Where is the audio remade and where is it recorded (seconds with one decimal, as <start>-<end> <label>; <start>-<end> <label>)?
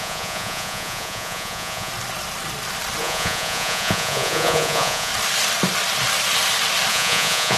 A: 0.0-1.9 remade; 1.9-3.0 recorded; 3.0-5.1 remade; 5.1-6.9 recorded; 6.9-7.6 remade